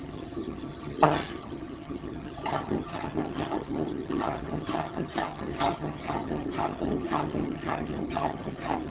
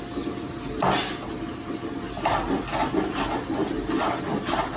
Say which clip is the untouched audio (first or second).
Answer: second